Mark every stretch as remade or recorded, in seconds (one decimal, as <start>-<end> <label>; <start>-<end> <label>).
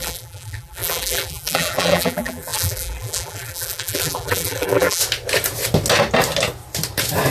0.0-5.0 remade; 5.0-7.3 recorded